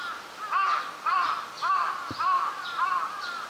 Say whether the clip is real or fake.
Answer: real